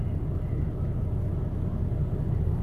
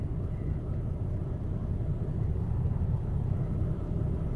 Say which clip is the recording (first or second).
first